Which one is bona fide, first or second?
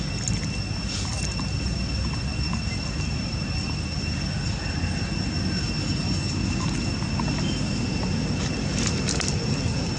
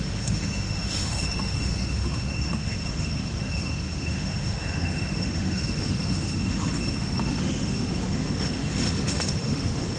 first